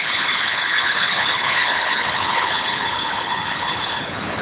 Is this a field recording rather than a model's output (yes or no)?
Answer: no